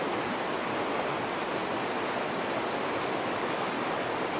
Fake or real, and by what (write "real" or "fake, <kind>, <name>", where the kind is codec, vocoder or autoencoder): real